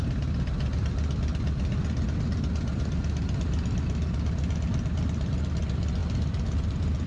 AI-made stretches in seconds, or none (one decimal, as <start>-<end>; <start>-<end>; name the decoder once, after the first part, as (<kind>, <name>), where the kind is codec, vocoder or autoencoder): none